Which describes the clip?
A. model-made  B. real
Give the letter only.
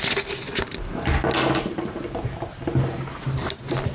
B